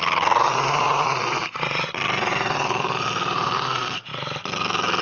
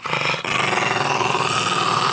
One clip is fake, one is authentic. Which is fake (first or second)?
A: first